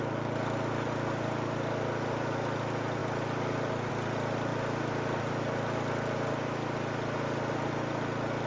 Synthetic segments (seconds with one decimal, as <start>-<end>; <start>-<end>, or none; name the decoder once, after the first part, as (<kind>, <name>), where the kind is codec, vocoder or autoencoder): none